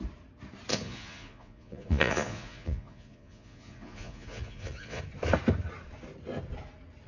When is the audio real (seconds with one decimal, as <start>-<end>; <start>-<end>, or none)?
0.0-0.7; 5.0-7.1